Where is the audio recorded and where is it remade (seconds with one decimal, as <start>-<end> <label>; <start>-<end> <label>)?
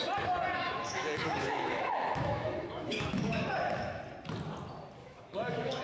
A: 0.0-0.5 recorded; 0.5-4.0 remade; 4.0-5.0 recorded; 5.0-5.8 remade